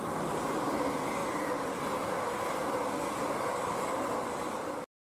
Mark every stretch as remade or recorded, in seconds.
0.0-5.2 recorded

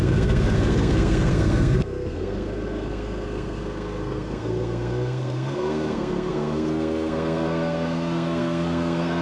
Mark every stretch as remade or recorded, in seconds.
0.0-9.2 remade

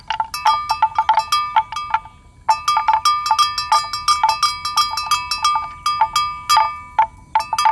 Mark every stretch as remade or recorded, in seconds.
0.0-7.7 recorded

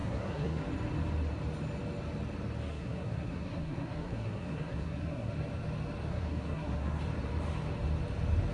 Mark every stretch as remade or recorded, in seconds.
0.0-0.6 remade; 0.6-2.7 recorded; 2.7-5.3 remade; 5.3-6.1 recorded; 6.1-7.0 remade; 7.0-8.5 recorded

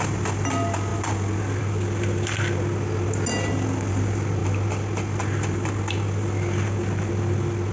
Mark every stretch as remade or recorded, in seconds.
0.0-7.7 recorded

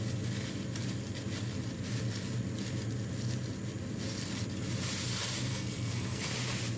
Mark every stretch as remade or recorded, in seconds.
0.0-5.5 recorded; 5.5-6.3 remade; 6.3-6.8 recorded

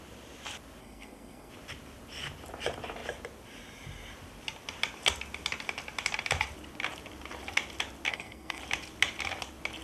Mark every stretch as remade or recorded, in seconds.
0.0-0.8 recorded; 0.8-1.5 remade; 1.5-8.1 recorded; 8.1-8.6 remade; 8.6-9.8 recorded

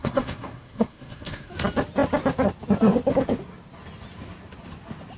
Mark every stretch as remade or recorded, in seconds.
0.0-1.5 remade; 1.5-5.2 recorded